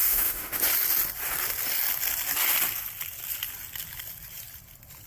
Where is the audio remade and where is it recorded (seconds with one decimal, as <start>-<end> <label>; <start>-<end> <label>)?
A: 0.0-0.6 remade; 0.6-5.1 recorded